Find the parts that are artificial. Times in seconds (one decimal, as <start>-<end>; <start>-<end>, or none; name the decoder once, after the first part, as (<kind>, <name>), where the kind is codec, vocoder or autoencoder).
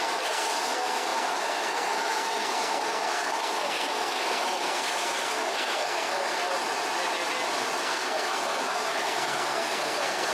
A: 0.0-6.5 (codec, SNAC); 7.8-10.3